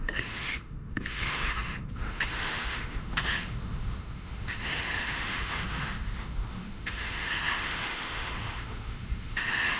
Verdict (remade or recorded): remade